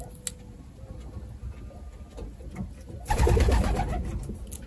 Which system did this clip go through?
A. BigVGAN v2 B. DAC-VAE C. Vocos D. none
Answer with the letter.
D